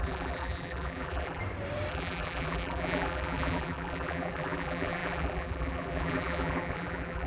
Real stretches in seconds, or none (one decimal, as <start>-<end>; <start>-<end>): 1.4-1.9